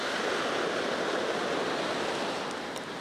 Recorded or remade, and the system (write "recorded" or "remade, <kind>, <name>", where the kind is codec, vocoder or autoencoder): recorded